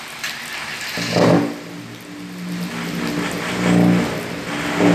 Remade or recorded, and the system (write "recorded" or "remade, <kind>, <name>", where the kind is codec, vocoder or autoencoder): recorded